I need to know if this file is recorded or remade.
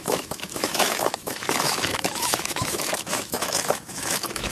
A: remade